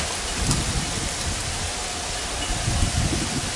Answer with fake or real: real